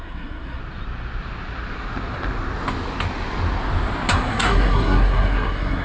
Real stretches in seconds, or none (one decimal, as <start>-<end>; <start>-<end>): 0.6-4.1